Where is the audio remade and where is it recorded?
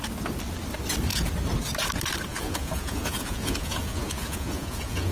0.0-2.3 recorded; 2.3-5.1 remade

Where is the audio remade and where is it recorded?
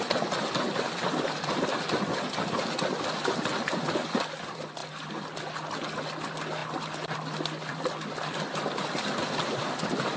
0.0-10.2 recorded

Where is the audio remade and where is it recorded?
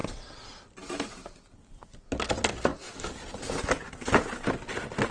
0.0-5.1 recorded